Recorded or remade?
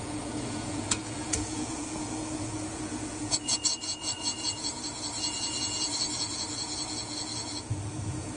remade